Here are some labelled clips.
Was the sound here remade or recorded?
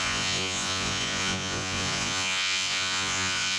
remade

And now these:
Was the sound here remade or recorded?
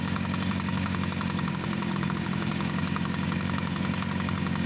remade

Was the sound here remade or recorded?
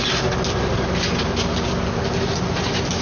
recorded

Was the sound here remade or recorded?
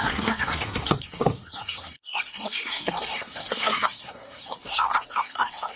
remade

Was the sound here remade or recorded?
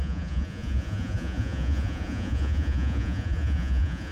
remade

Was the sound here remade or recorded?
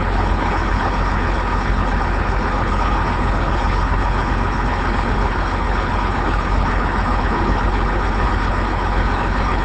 remade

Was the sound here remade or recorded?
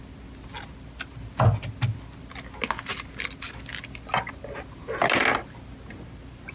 recorded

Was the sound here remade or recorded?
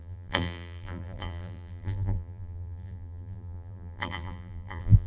remade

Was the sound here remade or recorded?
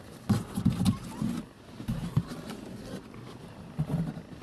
recorded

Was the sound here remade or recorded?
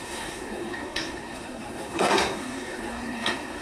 remade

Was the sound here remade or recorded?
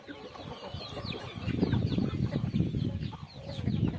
recorded